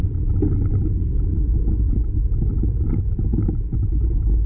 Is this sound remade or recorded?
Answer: recorded